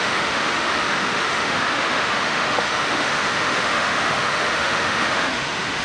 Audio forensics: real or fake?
fake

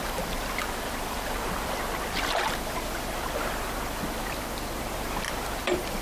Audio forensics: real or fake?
fake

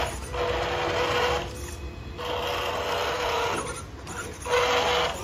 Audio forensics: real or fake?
real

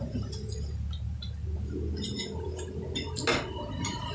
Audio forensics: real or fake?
real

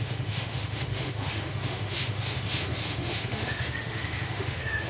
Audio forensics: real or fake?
fake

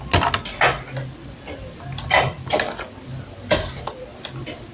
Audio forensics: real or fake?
real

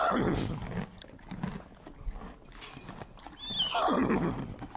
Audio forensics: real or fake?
real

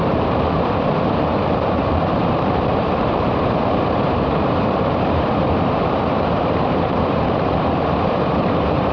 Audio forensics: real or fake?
fake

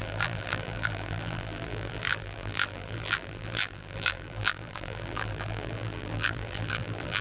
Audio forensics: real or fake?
fake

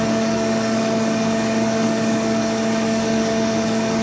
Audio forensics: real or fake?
fake